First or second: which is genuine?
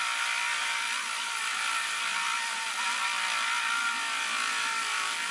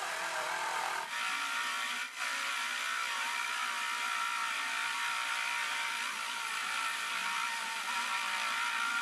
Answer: first